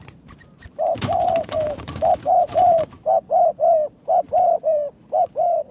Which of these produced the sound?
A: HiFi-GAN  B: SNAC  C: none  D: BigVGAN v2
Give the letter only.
D